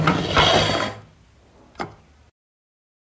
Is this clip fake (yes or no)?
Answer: no